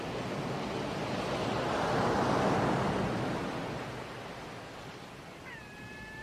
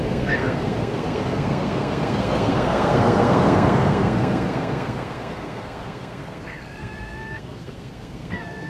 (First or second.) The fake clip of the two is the second